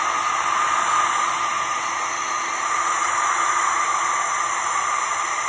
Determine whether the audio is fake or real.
real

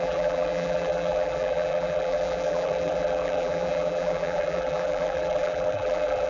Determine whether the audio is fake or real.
fake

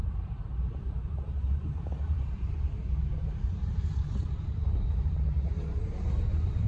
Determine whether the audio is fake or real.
fake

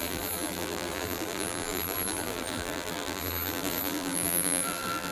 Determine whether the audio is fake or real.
fake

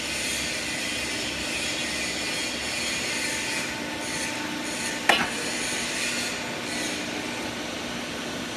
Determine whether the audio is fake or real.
real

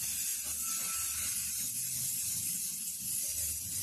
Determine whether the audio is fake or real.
real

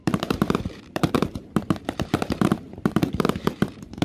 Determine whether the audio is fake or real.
fake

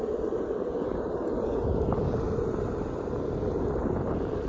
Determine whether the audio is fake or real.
real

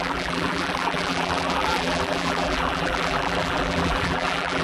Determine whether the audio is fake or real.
fake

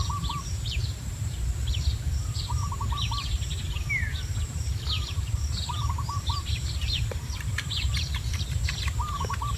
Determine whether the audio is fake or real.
fake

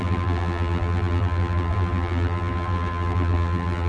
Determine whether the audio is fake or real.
fake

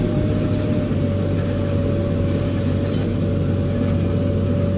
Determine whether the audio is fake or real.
real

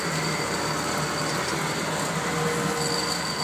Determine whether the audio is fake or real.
real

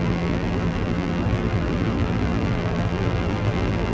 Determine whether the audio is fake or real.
fake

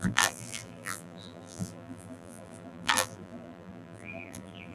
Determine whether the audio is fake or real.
fake